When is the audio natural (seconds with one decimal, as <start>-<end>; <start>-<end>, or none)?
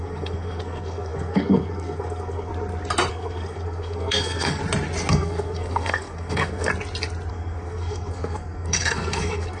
2.5-3.1; 4.6-5.1; 6.7-7.3